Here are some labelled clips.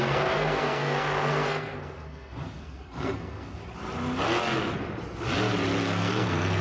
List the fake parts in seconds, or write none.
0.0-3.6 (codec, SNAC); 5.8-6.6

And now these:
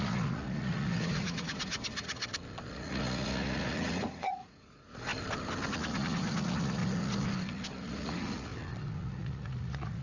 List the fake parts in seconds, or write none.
0.0-2.2 (vocoder, Vocos); 2.7-5.1; 5.7-6.8; 7.9-8.5; 9.0-10.0

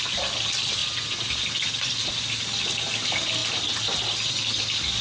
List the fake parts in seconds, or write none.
none

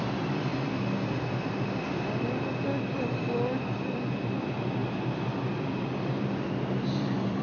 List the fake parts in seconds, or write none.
0.0-0.5 (vocoder, BigVGAN v2); 4.3-7.4

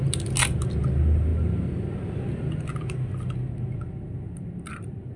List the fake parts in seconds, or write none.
none

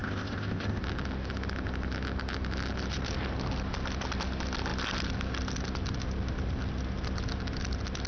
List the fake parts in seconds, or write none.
0.0-0.8 (codec, ZipCodec)

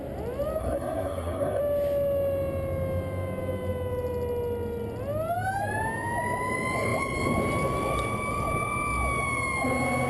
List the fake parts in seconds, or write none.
0.6-1.6 (codec, SNAC)

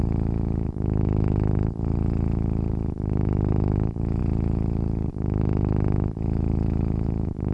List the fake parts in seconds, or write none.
0.0-1.9 (autoencoder, DAC-VAE); 2.7-4.2; 5.1-7.5